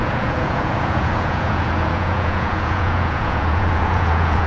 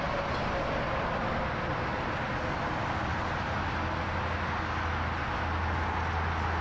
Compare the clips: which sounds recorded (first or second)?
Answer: second